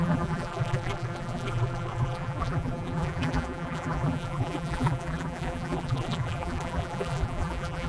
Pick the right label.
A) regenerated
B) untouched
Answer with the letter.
A